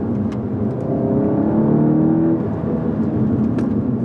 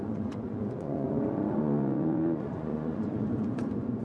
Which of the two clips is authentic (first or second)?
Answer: first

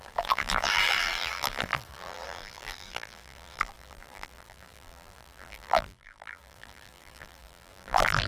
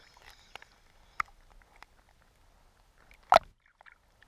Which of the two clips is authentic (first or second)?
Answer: second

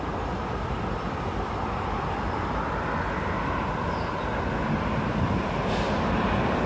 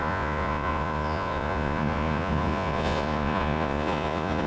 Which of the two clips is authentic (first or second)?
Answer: first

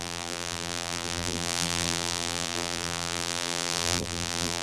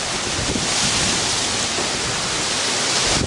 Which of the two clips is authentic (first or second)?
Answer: second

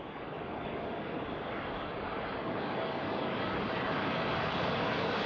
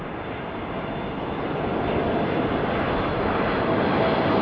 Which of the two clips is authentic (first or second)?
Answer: second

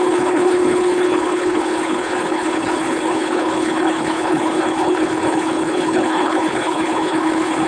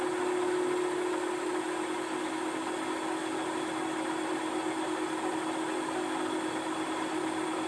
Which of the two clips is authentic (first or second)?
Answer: second